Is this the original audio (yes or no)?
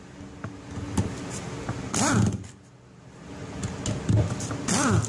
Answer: yes